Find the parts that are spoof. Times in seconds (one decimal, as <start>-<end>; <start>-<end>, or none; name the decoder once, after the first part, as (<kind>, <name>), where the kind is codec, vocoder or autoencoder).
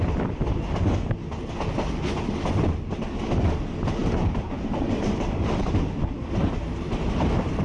4.0-5.7 (vocoder, BigVGAN v2)